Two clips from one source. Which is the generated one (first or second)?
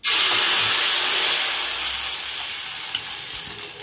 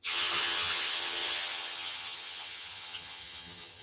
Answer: second